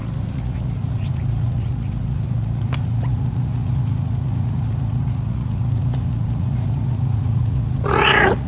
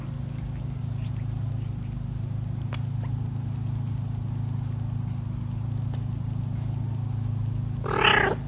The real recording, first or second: second